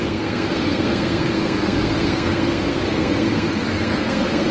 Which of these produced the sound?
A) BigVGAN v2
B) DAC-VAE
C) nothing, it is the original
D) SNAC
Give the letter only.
D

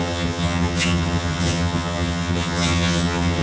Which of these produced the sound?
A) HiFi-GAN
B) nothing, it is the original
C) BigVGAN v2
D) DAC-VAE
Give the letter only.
A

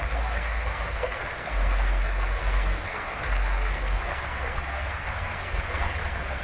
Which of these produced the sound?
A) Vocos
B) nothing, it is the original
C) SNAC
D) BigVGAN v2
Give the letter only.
C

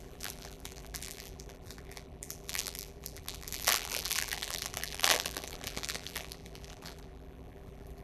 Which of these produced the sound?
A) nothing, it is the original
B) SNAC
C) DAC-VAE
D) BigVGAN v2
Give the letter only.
D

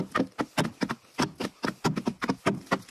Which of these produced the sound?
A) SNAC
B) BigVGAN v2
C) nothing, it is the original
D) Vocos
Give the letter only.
C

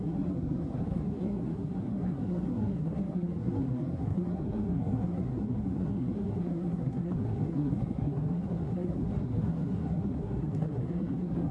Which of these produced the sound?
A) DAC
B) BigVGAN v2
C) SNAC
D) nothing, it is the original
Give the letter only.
C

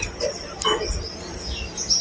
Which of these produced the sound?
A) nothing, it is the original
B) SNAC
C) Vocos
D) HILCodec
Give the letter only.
A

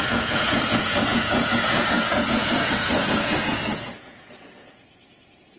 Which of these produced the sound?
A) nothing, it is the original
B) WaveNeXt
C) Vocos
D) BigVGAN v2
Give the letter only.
C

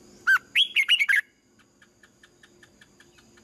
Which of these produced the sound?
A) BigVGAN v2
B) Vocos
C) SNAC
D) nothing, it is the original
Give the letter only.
D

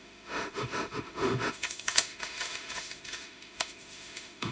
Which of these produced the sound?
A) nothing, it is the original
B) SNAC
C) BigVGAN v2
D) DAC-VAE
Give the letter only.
D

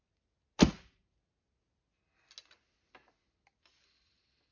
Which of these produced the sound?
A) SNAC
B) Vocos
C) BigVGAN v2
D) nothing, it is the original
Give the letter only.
D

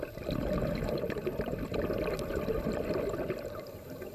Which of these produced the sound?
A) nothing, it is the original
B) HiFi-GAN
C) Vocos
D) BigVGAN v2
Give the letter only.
D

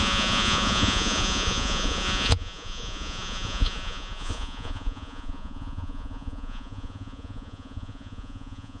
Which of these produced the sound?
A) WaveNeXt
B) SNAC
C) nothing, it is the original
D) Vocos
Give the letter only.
D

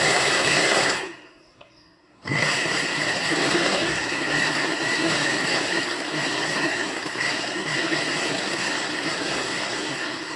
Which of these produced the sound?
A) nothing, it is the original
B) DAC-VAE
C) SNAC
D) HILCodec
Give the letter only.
C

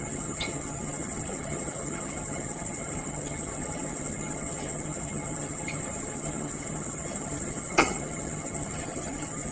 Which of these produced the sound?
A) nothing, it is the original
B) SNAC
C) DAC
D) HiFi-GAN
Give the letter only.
D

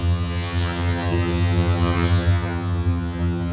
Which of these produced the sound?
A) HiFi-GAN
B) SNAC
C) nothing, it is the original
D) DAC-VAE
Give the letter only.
A